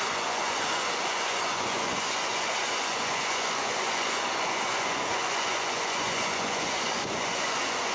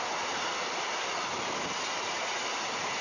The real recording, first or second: second